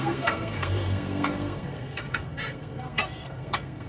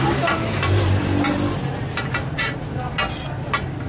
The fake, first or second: first